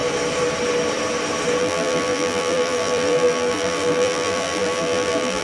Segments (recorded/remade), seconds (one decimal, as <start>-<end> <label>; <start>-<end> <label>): 0.0-1.6 recorded; 1.6-5.4 remade